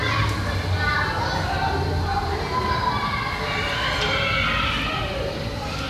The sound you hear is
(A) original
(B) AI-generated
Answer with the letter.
A